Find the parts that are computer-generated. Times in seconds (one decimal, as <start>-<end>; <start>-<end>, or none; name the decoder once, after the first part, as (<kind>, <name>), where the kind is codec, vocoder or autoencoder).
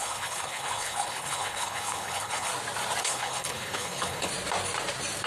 0.0-2.5 (codec, HILCodec); 3.0-4.3